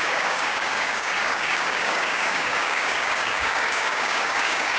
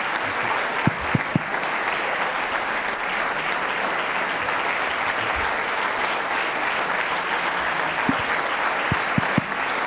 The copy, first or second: first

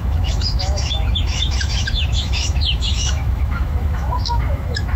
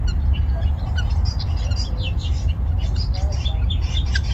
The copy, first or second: first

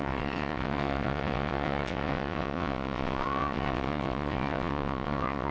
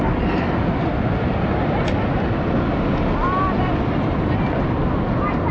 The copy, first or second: first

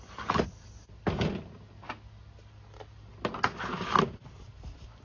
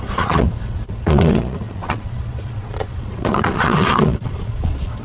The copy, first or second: second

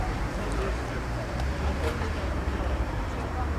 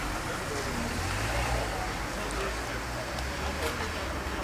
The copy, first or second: first